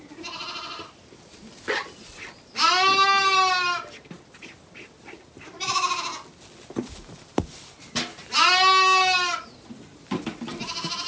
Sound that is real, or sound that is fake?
real